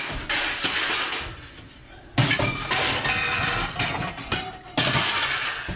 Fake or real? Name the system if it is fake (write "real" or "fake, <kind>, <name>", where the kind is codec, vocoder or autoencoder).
real